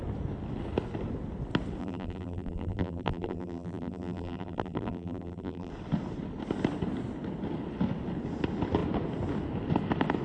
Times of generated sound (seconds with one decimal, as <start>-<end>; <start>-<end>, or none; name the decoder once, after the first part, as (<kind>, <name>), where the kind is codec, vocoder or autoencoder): 1.8-5.7 (vocoder, BigVGAN v2)